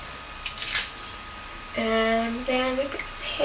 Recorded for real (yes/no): yes